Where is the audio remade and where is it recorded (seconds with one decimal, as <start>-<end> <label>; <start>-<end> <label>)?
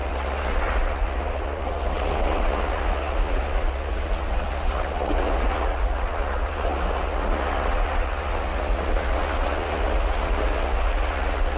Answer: 0.0-11.6 remade